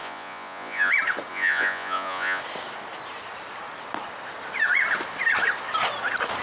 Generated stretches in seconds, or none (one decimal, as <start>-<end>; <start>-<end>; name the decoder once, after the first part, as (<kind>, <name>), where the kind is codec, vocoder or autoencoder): 0.0-0.9 (vocoder, Vocos); 1.3-2.4